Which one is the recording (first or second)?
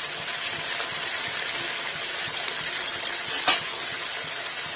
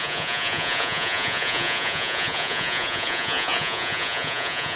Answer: first